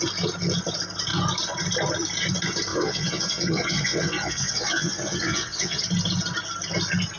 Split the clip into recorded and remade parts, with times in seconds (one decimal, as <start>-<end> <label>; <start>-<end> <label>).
0.0-2.7 recorded; 2.7-5.8 remade; 5.8-7.2 recorded

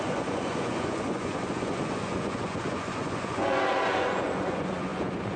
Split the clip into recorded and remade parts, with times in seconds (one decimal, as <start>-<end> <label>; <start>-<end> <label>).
0.0-5.4 remade

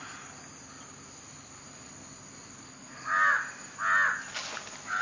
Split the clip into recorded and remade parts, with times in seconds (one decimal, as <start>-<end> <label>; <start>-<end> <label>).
0.0-5.0 recorded

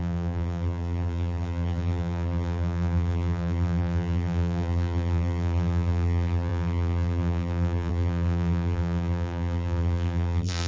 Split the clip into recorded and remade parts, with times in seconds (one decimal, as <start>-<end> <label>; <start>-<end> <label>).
0.0-10.7 remade

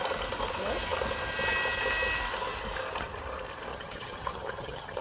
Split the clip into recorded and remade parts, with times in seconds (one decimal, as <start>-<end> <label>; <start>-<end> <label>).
0.0-3.7 recorded; 3.7-5.0 remade